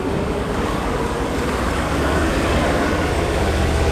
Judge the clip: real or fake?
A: fake